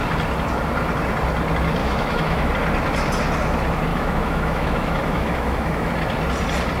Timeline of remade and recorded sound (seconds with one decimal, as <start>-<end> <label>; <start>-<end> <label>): 0.0-1.8 recorded; 1.8-2.5 remade; 2.5-3.9 recorded; 3.9-5.9 remade; 5.9-6.8 recorded